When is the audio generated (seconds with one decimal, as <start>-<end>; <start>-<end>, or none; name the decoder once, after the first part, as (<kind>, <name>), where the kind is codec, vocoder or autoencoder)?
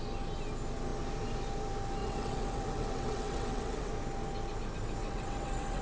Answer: 2.0-3.9 (vocoder, WaveNeXt); 5.0-5.8